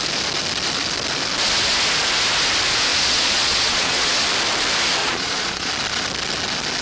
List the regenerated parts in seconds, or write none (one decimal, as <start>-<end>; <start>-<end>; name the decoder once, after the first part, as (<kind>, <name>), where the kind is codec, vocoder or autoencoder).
2.9-4.1 (vocoder, Vocos); 5.0-5.7